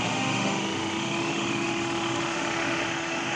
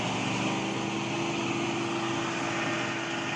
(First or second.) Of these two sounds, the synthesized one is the first